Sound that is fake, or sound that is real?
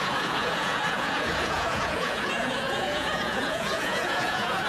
fake